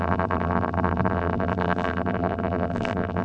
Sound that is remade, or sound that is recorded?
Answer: remade